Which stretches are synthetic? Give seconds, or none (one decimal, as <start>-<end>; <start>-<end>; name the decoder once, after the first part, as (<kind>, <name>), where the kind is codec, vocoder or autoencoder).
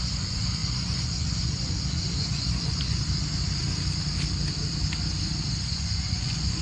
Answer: 0.0-3.1 (vocoder, Vocos); 5.7-6.6